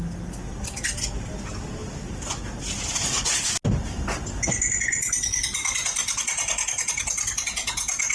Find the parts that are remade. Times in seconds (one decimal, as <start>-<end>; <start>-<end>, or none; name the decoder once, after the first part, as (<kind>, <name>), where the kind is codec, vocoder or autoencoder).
none